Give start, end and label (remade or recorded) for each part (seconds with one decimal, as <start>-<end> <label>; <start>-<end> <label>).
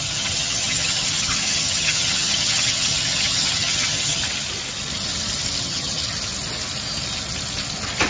0.0-4.2 remade; 4.2-5.6 recorded; 5.6-6.0 remade; 6.0-8.1 recorded